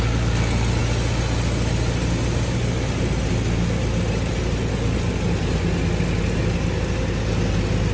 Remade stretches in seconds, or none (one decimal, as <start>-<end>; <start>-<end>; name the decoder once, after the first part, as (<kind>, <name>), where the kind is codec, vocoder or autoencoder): none